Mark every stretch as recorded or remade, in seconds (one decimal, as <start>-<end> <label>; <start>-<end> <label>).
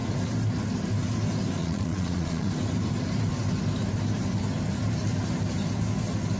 0.0-1.6 recorded; 1.6-2.5 remade; 2.5-6.4 recorded